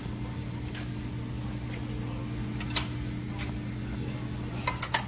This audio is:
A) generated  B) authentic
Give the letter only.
B